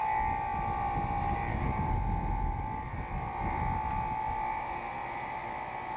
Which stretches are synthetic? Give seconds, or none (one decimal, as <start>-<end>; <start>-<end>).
3.4-3.9; 5.0-6.0